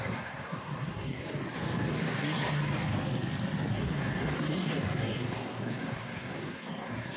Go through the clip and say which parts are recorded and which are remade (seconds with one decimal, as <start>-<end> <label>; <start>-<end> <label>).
0.0-1.2 remade; 1.2-2.0 recorded; 2.0-2.6 remade; 2.6-3.7 recorded; 3.7-7.2 remade